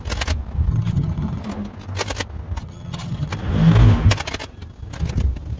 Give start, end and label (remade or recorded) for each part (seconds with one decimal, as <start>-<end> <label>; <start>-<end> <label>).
0.0-0.7 recorded; 0.7-1.4 remade; 1.4-2.6 recorded; 2.6-3.3 remade; 3.3-5.6 recorded